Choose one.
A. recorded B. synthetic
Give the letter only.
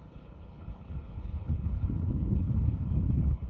B